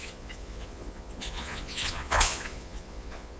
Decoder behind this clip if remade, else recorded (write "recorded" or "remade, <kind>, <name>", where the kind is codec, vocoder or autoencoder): remade, vocoder, Vocos